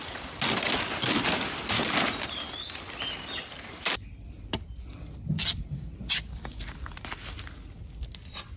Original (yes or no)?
yes